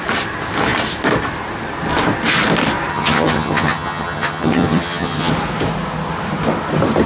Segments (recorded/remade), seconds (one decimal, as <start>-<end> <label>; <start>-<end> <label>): 0.0-2.9 recorded; 2.9-5.3 remade; 5.3-7.1 recorded